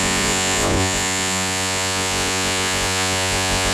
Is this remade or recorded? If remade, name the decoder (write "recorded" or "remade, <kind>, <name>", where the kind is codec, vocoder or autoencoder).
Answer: remade, vocoder, Vocos